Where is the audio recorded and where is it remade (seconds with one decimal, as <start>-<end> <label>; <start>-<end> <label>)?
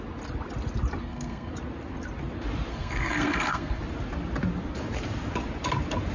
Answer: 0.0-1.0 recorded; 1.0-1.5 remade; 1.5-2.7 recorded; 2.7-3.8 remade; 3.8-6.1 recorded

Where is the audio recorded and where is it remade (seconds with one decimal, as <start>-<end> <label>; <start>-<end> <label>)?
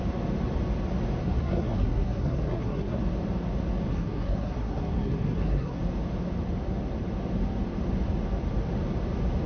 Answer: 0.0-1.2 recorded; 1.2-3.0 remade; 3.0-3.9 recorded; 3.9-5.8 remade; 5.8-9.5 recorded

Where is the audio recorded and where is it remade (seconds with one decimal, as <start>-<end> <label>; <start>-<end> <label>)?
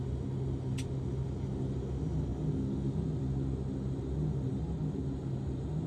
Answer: 0.0-5.9 recorded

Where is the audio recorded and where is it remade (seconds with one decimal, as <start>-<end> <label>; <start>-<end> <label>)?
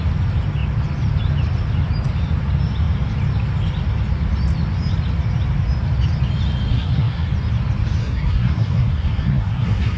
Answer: 0.0-6.7 recorded; 6.7-7.3 remade; 7.3-8.0 recorded; 8.0-10.0 remade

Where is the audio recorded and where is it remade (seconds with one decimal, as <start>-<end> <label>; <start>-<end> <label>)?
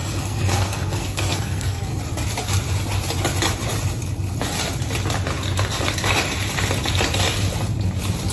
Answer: 0.0-2.0 remade; 2.0-8.3 recorded